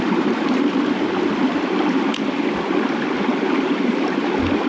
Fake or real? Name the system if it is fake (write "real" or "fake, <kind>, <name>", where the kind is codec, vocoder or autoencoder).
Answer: real